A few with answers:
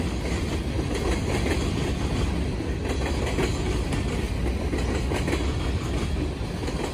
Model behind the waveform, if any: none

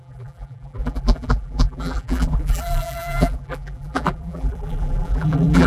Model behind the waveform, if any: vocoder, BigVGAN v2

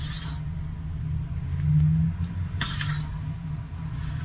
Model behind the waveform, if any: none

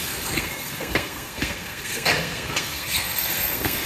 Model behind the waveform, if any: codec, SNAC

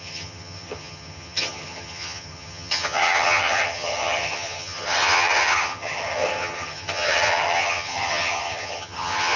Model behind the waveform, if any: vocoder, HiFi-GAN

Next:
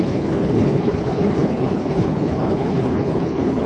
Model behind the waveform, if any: codec, HILCodec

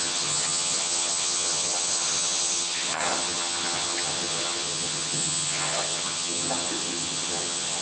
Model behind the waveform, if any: vocoder, HiFi-GAN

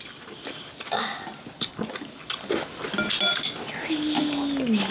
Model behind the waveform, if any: none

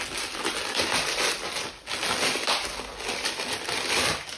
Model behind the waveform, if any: none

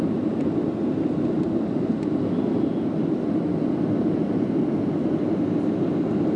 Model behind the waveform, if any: none